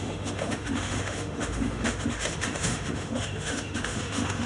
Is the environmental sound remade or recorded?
remade